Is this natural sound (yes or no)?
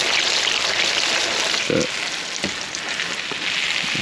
yes